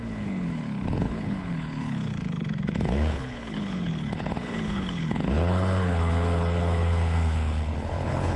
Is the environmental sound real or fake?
fake